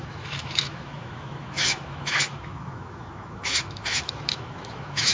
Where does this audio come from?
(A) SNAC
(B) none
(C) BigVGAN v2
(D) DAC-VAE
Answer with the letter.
D